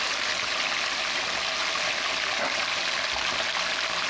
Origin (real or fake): real